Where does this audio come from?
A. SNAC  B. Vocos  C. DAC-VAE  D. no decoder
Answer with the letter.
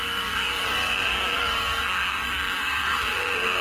A